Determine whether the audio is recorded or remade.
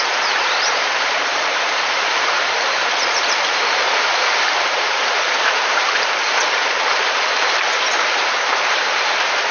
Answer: remade